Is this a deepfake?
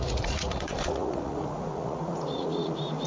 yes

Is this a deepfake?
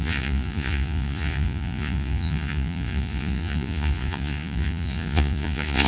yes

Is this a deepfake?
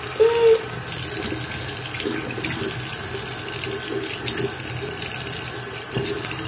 no